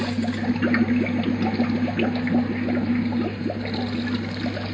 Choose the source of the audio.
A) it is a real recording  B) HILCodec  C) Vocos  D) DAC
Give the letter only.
A